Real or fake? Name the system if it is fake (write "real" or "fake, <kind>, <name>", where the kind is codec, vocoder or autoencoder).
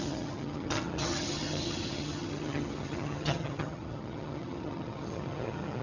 fake, vocoder, HiFi-GAN